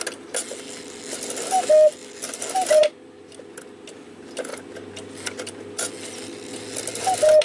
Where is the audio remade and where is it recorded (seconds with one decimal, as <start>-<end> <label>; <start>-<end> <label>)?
0.0-7.4 recorded